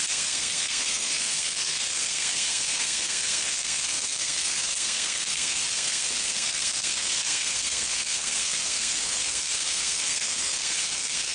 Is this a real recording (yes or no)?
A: no